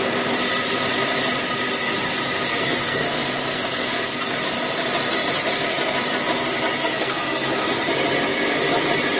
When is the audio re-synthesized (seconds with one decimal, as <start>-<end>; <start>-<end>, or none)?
2.5-4.2; 6.8-7.8